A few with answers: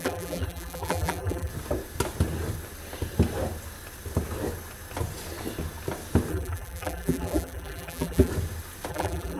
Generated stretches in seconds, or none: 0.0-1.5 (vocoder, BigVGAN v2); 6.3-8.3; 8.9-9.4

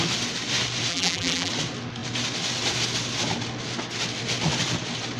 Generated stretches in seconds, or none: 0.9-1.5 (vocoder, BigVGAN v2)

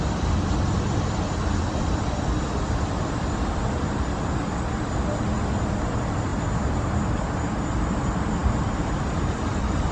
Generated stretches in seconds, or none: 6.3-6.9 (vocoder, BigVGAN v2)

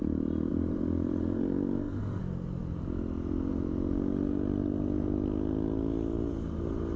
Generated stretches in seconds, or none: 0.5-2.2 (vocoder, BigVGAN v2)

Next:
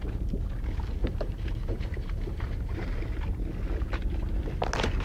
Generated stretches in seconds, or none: 1.0-3.0 (vocoder, BigVGAN v2)